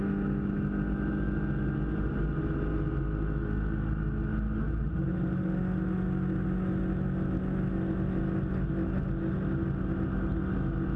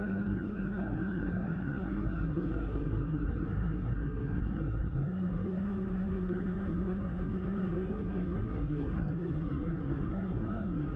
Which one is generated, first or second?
second